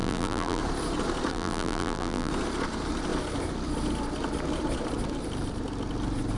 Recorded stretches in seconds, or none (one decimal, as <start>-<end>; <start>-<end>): 0.6-1.3; 2.3-6.4